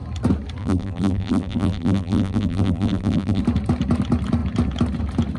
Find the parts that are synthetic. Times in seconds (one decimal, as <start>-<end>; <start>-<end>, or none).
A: 0.6-3.4